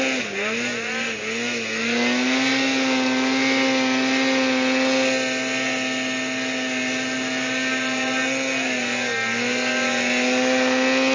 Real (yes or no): yes